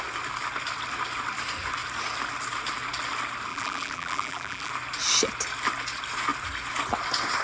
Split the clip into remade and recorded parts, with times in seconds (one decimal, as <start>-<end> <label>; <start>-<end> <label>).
0.0-3.5 recorded; 3.5-4.7 remade; 4.7-7.4 recorded